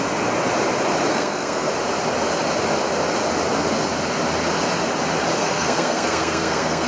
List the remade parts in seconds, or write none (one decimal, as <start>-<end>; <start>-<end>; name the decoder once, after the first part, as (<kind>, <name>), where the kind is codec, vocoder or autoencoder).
1.1-1.7 (codec, SNAC); 5.4-6.9